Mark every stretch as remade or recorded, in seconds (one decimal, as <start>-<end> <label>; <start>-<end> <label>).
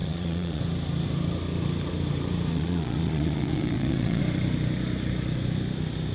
0.0-0.6 remade; 0.6-2.5 recorded; 2.5-4.2 remade; 4.2-6.1 recorded